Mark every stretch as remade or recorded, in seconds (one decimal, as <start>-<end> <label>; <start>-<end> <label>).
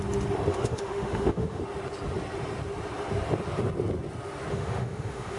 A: 0.0-0.5 recorded; 0.5-1.6 remade; 1.6-4.5 recorded; 4.5-5.4 remade